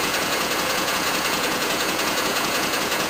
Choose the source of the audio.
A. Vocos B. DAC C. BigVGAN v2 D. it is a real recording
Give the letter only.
A